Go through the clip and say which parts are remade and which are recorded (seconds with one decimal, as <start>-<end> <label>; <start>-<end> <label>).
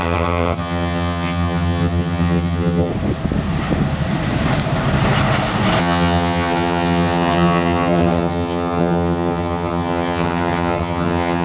0.0-2.9 remade; 2.9-5.8 recorded; 5.8-11.4 remade